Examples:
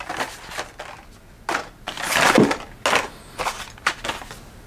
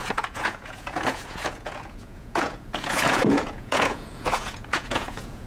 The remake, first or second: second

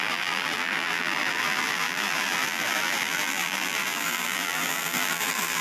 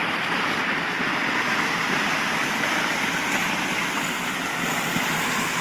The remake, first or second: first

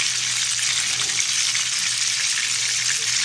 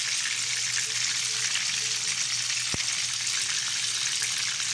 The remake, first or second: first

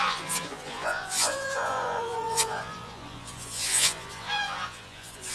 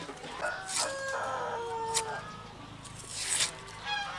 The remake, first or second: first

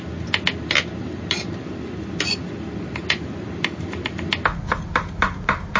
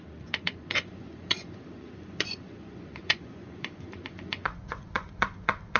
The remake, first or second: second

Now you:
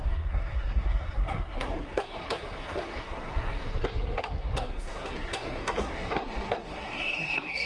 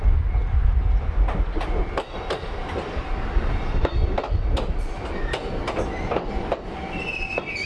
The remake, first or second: first